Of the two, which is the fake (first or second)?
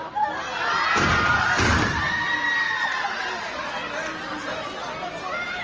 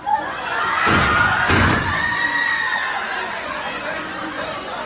second